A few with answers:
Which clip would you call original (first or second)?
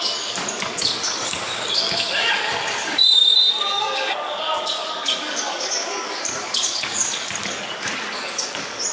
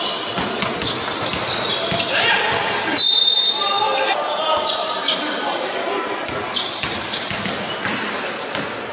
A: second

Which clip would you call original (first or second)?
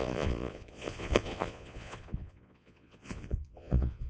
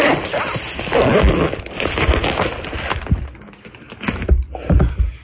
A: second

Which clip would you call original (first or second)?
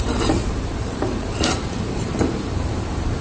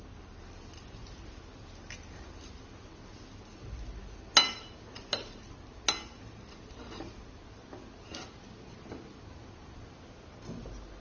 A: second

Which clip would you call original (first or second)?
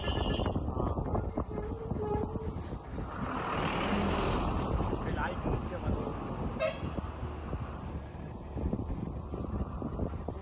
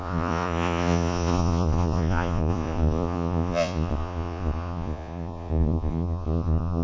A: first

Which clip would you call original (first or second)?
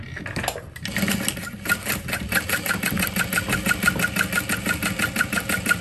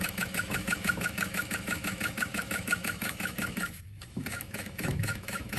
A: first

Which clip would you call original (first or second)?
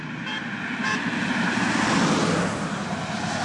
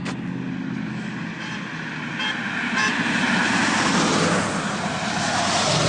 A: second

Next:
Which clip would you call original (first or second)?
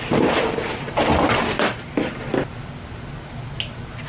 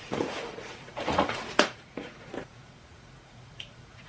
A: first